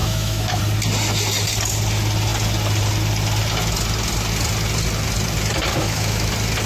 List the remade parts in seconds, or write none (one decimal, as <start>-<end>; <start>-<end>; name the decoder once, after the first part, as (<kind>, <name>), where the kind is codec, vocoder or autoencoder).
0.0-0.6 (autoencoder, DAC-VAE); 5.7-6.3